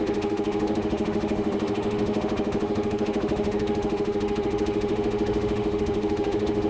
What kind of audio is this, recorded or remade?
remade